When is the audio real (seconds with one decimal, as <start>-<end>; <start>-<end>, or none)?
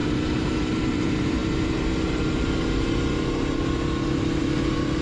none